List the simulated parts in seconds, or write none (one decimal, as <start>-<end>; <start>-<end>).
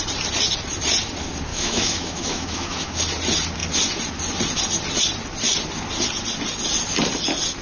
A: 1.5-3.0